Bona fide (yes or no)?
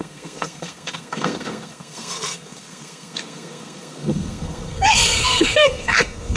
no